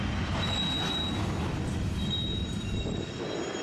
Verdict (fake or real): real